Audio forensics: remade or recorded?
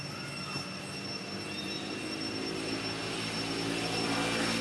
recorded